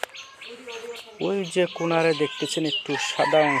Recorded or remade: recorded